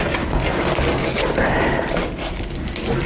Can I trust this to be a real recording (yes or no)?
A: yes